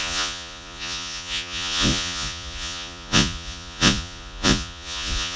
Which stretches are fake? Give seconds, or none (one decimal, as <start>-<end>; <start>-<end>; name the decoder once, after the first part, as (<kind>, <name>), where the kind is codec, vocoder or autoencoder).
0.0-5.4 (vocoder, Vocos)